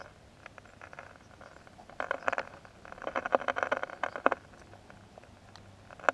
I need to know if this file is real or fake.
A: real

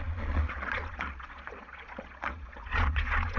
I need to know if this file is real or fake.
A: fake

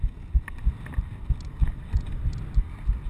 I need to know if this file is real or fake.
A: real